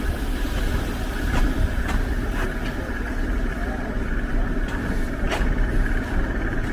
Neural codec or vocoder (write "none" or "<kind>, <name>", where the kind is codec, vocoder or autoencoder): none